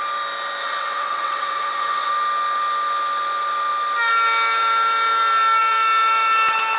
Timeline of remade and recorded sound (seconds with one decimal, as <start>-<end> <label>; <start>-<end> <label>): 0.0-0.6 recorded; 0.6-2.1 remade; 2.1-6.8 recorded

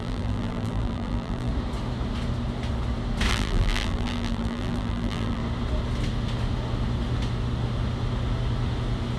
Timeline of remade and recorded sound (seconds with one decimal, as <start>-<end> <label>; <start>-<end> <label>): 0.0-1.5 remade; 1.5-3.3 recorded; 3.3-5.4 remade; 5.4-9.2 recorded